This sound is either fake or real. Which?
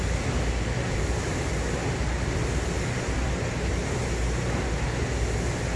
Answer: real